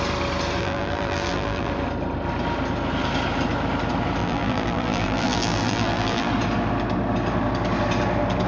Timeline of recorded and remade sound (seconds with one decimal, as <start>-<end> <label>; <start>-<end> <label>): 0.0-0.6 recorded; 0.6-1.7 remade; 1.7-4.2 recorded; 4.2-6.3 remade; 6.3-8.5 recorded